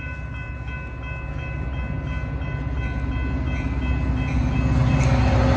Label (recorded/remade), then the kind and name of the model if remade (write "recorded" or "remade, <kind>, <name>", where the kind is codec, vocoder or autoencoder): recorded